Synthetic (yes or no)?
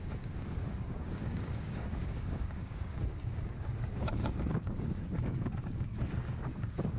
yes